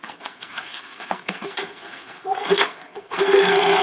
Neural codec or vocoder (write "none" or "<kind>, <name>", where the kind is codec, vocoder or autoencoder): codec, SNAC